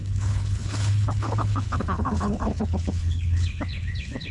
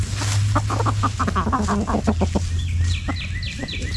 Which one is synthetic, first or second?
first